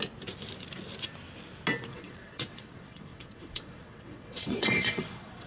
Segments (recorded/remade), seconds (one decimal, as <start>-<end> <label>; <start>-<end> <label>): 0.0-1.9 recorded; 1.9-5.5 remade